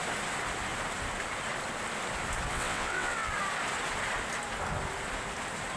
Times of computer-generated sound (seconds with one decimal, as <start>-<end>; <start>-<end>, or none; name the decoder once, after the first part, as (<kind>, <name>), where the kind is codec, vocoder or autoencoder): 2.5-3.3 (vocoder, WaveNeXt)